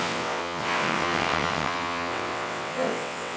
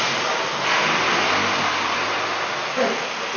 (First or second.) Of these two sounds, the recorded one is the second